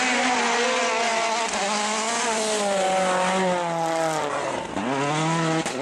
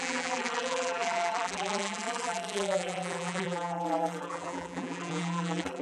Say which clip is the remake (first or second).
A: second